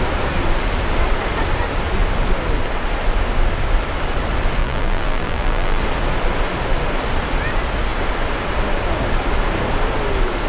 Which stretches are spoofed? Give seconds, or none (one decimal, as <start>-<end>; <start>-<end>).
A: 4.6-5.8